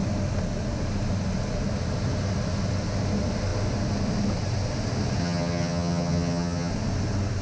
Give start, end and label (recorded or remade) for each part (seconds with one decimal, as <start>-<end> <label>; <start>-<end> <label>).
0.0-5.2 recorded; 5.2-6.7 remade; 6.7-7.4 recorded